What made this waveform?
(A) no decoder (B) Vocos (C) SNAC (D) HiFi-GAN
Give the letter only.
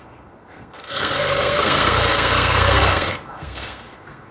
C